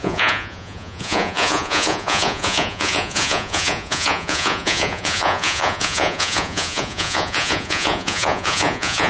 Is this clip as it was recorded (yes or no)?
no